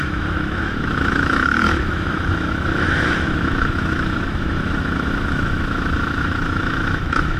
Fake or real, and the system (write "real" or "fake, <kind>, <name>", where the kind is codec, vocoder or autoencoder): fake, autoencoder, DAC-VAE